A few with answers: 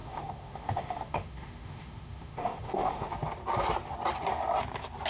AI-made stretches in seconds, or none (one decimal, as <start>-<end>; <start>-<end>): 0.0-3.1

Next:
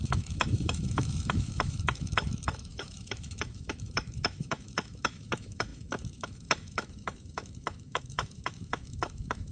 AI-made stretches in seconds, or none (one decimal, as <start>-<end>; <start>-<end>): 0.0-9.5

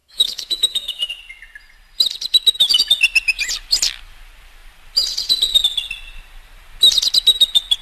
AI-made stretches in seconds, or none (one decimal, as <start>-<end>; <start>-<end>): 0.0-1.2

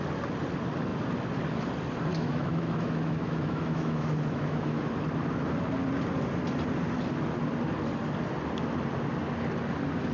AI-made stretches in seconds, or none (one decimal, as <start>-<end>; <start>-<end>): 2.1-4.8

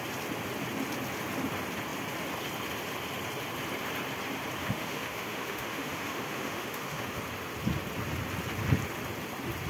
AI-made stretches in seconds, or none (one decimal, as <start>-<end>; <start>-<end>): 4.6-7.2